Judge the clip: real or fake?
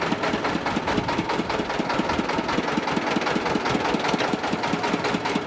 real